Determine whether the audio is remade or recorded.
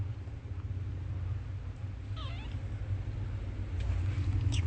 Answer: recorded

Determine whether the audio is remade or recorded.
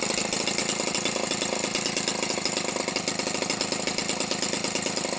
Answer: recorded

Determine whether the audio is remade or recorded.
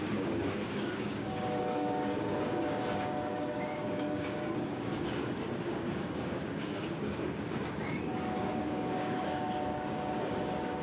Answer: remade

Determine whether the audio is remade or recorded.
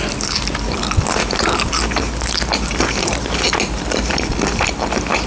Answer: recorded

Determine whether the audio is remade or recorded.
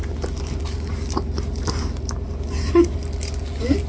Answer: recorded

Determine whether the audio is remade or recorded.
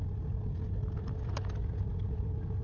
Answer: recorded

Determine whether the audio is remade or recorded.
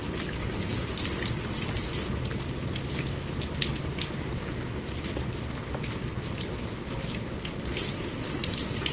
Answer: recorded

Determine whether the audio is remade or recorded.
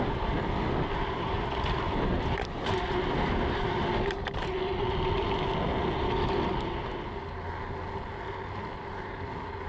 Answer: recorded